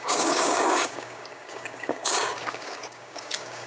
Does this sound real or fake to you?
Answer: fake